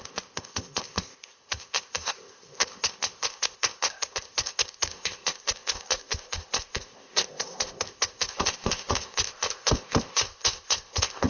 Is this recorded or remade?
remade